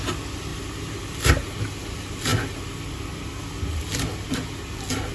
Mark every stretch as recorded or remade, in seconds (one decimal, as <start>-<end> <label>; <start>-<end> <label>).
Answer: 0.0-5.1 recorded